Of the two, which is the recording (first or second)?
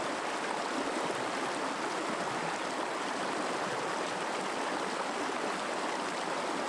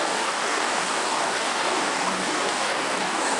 first